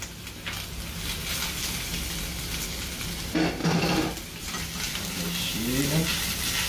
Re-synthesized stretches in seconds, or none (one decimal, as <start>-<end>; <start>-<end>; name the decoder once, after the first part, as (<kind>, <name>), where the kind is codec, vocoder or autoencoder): 3.6-4.5 (vocoder, BigVGAN v2)